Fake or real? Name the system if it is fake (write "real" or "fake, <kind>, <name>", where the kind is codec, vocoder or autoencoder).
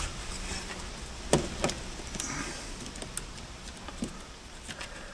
real